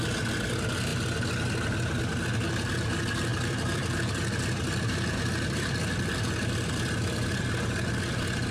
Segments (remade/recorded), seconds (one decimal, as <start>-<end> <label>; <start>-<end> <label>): 0.0-3.3 recorded; 3.3-7.4 remade; 7.4-8.5 recorded

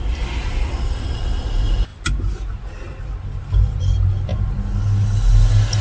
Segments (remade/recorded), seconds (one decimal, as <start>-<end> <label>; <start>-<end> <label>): 0.0-0.5 recorded; 0.5-1.4 remade; 1.4-5.8 recorded

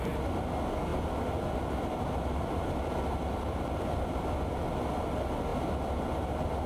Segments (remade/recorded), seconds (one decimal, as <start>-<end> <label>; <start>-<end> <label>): 0.0-6.7 recorded

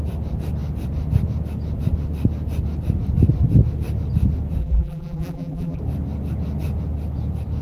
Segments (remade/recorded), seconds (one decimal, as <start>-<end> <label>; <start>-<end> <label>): 0.0-4.6 recorded; 4.6-5.8 remade; 5.8-7.6 recorded

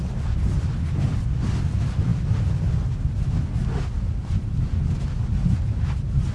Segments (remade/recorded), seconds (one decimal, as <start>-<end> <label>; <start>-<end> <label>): 0.0-6.3 recorded

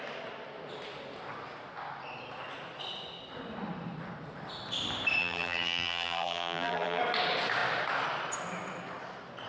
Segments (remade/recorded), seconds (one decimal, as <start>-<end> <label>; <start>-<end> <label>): 0.0-5.2 recorded; 5.2-7.0 remade; 7.0-9.5 recorded

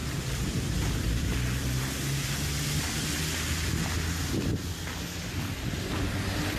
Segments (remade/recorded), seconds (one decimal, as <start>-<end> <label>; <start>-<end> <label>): 0.0-1.8 remade; 1.8-6.6 recorded

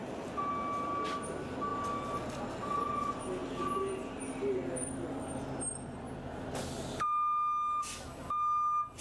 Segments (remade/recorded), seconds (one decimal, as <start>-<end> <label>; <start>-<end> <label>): 0.0-9.0 recorded